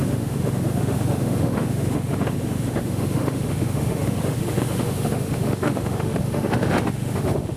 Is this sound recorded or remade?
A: remade